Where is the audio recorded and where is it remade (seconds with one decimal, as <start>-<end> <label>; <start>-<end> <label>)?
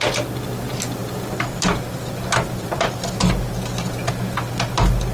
0.0-5.1 recorded